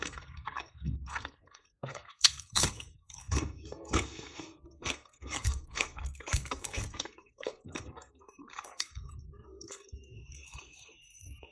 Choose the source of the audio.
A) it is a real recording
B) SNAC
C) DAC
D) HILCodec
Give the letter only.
B